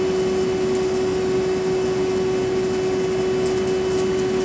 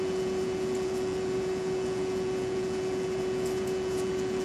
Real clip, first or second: first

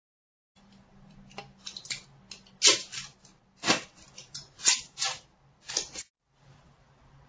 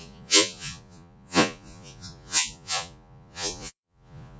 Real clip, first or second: first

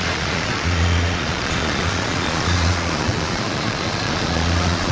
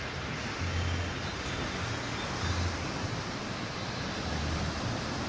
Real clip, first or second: second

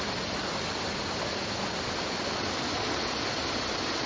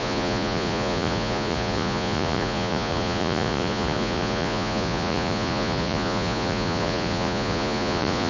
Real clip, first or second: first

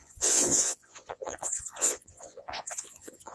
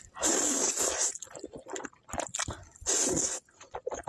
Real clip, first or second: second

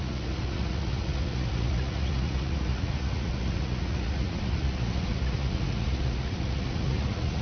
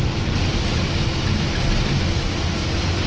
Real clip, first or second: second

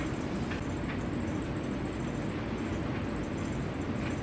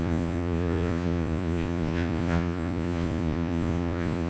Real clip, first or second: first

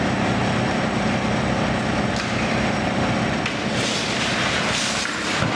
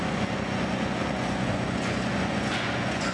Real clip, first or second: first